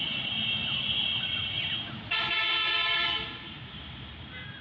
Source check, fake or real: real